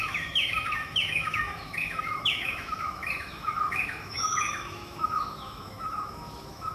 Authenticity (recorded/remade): remade